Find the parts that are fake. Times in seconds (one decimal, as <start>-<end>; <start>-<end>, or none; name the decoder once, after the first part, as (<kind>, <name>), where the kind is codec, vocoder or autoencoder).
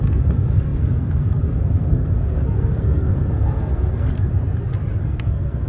0.0-4.3 (codec, SNAC); 5.0-5.7